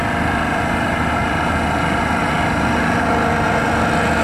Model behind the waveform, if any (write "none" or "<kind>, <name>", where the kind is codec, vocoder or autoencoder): none